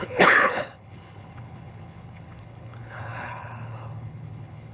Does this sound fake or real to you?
fake